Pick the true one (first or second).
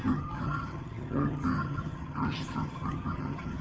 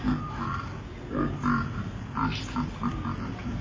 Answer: second